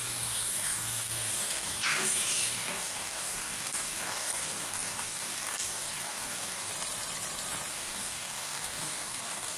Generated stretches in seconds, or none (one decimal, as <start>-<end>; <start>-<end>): 0.0-6.7; 7.7-9.6

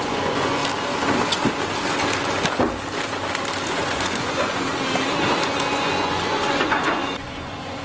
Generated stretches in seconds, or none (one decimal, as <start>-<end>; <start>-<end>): 0.0-0.6; 3.7-4.7; 5.7-7.8

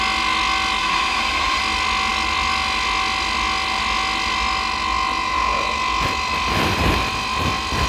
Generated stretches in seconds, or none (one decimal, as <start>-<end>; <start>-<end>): 0.8-1.6

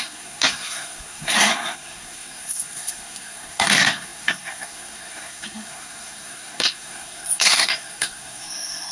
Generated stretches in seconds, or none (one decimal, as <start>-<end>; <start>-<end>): 0.0-8.9

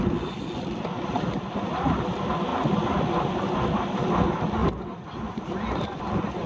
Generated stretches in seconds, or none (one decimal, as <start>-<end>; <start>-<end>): 4.6-6.0